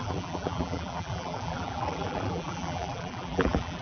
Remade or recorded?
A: remade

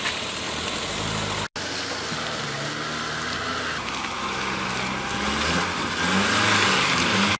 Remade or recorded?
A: recorded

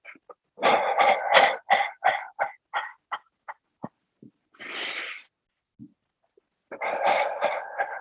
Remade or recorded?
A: recorded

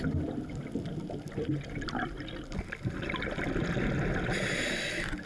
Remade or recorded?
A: recorded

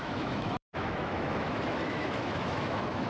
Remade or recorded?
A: remade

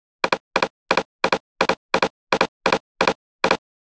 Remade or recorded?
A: recorded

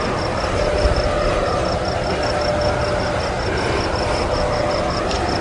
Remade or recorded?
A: recorded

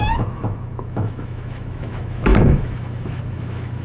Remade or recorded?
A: remade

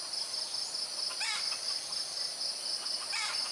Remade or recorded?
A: recorded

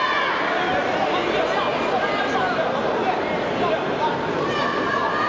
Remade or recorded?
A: recorded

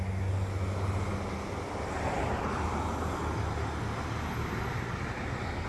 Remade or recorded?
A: recorded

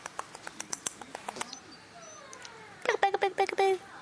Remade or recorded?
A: recorded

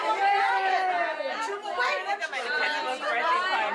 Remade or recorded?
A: remade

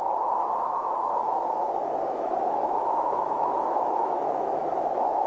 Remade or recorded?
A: remade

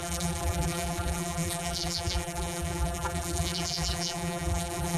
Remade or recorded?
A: remade